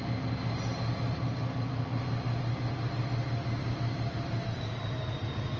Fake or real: real